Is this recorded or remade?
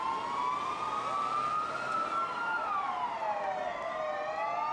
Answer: recorded